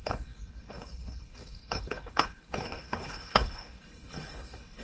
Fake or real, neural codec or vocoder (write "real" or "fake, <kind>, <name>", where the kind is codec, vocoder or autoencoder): fake, codec, HILCodec